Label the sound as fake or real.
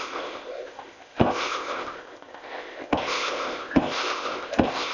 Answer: fake